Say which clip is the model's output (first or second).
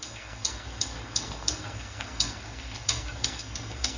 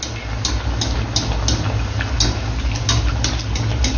first